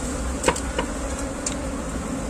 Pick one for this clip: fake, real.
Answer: real